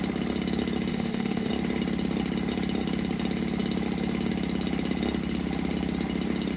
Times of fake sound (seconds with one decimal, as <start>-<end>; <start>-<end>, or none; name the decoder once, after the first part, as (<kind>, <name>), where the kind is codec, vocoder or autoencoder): 0.9-1.5 (autoencoder, DAC-VAE)